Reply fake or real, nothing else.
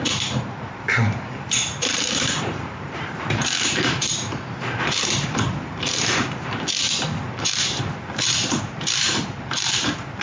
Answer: fake